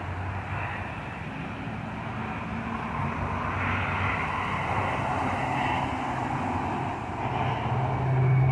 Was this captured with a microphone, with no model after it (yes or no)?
yes